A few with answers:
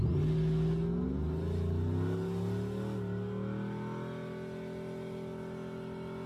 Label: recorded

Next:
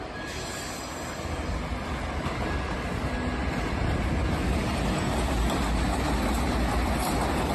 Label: recorded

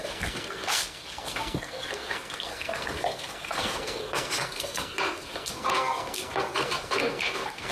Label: remade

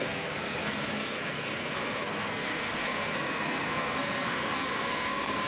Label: remade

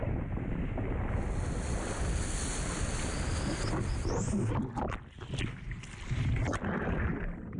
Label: recorded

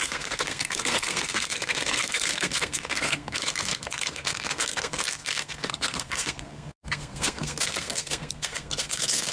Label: remade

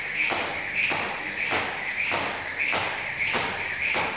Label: recorded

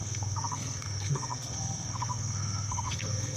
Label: remade